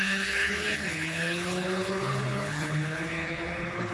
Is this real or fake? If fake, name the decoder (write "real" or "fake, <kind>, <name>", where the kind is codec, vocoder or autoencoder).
fake, codec, HILCodec